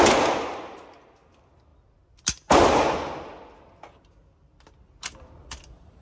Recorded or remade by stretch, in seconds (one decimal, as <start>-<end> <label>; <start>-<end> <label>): 0.0-6.0 recorded